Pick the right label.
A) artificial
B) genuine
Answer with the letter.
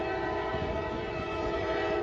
A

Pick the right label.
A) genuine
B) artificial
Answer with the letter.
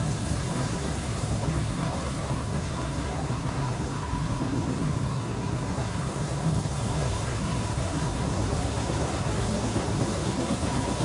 B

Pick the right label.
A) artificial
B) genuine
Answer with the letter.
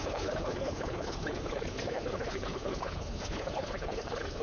A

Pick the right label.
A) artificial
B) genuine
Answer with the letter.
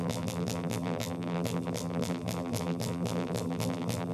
A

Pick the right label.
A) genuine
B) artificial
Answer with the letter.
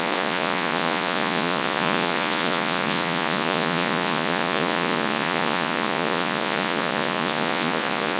B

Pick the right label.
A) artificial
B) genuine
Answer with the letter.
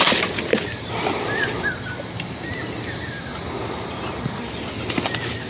B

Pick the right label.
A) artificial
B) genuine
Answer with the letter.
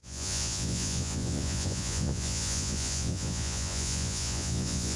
A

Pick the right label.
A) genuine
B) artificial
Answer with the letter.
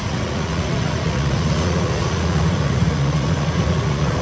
B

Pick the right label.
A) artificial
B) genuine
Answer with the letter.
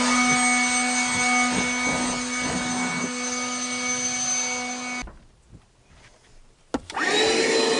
B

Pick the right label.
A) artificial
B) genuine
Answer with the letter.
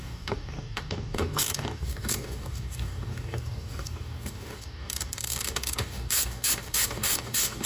A